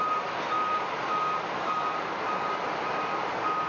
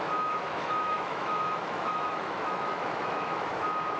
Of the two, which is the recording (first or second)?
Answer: first